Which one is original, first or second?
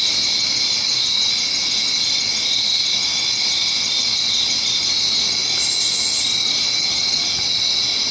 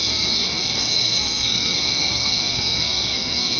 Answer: first